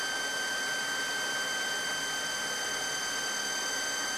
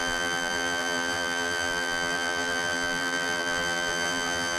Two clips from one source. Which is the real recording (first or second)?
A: first